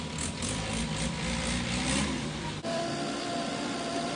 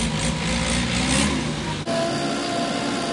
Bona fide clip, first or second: second